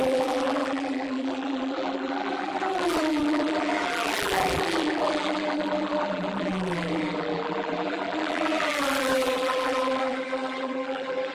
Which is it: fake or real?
fake